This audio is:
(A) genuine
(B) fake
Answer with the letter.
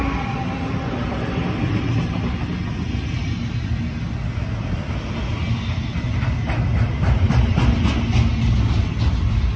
A